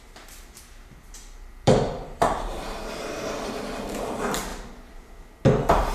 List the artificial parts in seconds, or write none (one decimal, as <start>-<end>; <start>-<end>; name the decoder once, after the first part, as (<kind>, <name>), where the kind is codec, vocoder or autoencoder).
1.5-3.6 (vocoder, BigVGAN v2)